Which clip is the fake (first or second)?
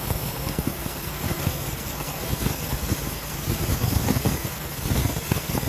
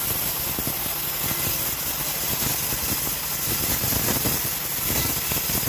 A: first